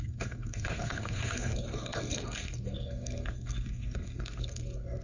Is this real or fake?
fake